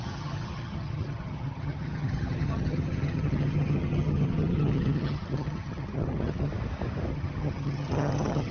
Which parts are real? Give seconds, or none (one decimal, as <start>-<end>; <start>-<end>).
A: 6.5-7.1